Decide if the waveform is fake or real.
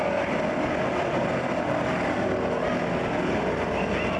real